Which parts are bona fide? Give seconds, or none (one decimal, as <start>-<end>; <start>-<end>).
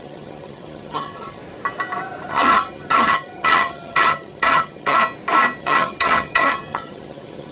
1.4-2.3; 5.0-5.6